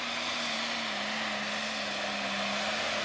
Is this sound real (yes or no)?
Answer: yes